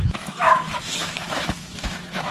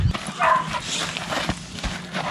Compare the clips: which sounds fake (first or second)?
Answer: first